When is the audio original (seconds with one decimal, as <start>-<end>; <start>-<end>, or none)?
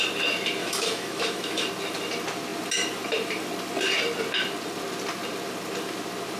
0.0-0.6; 1.7-6.4